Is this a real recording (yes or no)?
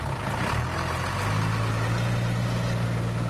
yes